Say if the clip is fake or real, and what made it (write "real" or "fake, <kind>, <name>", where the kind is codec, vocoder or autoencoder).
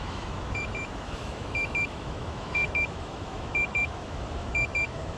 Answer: fake, autoencoder, DAC-VAE